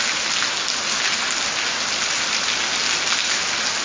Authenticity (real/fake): real